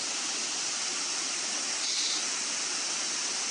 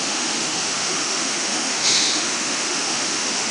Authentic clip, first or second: first